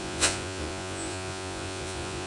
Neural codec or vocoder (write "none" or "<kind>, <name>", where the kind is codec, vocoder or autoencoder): vocoder, Vocos